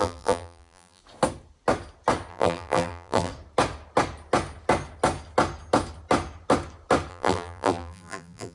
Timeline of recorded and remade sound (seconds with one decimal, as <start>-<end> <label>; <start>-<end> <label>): 0.0-1.0 remade; 1.0-2.3 recorded; 2.3-3.3 remade; 3.3-7.1 recorded; 7.1-8.5 remade